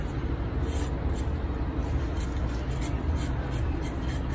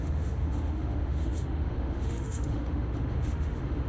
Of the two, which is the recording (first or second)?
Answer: first